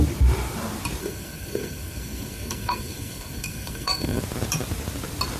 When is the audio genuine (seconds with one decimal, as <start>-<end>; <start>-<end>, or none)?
0.0-1.0; 4.2-5.4